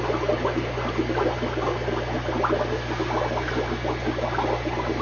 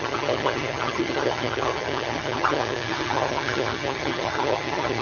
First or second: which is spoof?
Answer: second